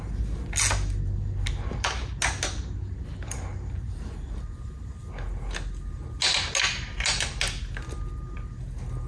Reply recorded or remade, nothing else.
recorded